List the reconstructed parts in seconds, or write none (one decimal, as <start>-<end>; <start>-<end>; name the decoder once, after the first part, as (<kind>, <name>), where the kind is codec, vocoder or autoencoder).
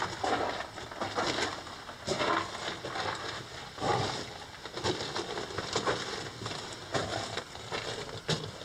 none